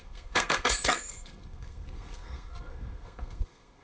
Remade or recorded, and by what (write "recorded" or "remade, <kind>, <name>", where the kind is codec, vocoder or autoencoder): remade, codec, SNAC